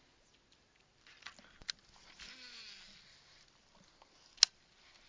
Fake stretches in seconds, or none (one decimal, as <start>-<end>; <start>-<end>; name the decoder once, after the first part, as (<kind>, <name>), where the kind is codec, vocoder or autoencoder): none